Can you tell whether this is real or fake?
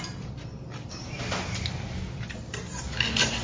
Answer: real